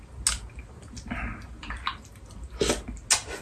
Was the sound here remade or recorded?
recorded